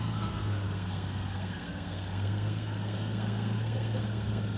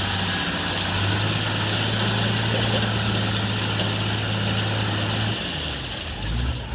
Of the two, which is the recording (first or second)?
second